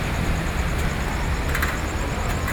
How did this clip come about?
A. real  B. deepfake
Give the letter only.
A